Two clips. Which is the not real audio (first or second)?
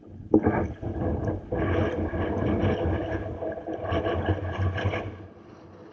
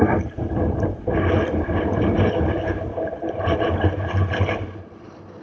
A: second